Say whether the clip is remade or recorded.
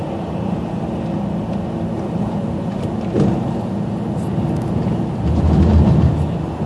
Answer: recorded